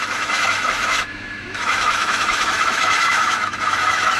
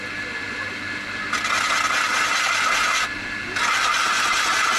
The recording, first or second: second